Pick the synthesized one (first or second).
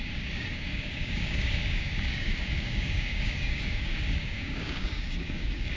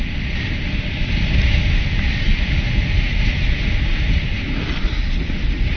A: first